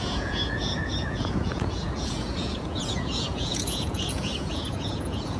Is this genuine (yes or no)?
no